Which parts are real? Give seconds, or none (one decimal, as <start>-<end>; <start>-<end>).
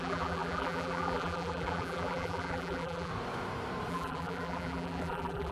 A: 3.1-3.9